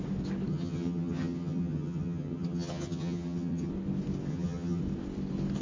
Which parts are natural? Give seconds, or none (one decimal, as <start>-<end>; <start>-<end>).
0.0-0.5; 3.7-4.3; 4.8-5.6